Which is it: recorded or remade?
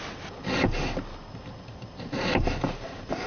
recorded